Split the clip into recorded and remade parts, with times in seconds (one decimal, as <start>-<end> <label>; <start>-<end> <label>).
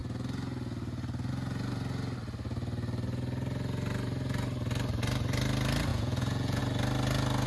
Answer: 0.0-5.9 recorded; 5.9-6.6 remade; 6.6-7.5 recorded